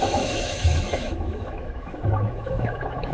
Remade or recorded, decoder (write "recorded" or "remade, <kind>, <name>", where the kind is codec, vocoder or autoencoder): remade, autoencoder, DAC-VAE